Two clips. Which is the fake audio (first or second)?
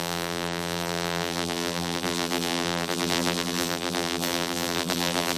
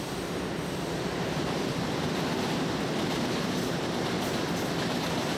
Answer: first